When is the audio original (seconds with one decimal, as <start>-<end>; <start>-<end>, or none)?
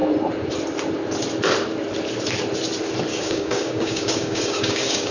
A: 0.0-3.1